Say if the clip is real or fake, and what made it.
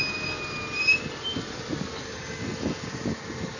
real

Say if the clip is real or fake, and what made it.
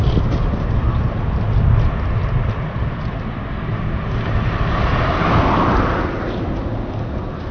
real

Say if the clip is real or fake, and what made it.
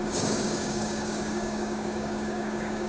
fake, codec, DAC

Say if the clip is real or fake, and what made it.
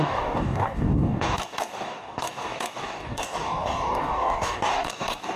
fake, codec, DAC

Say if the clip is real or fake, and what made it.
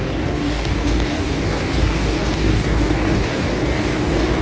fake, codec, DAC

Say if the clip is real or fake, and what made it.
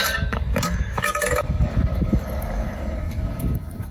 fake, codec, DAC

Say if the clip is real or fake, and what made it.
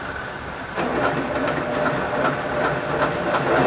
real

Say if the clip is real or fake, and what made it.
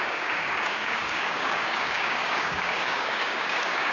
fake, codec, DAC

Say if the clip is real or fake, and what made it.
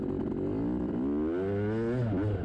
real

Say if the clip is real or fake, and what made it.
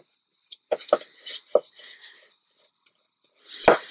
real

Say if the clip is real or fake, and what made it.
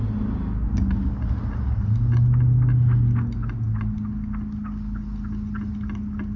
real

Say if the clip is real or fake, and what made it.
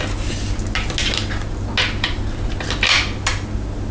real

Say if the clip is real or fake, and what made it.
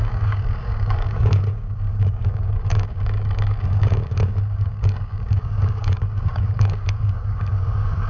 fake, codec, DAC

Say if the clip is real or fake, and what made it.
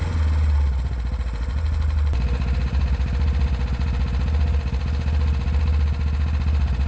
real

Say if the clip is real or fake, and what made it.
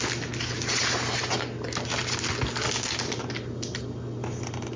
real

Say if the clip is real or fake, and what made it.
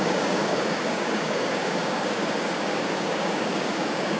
fake, codec, DAC